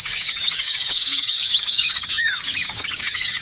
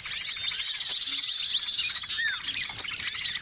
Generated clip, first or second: first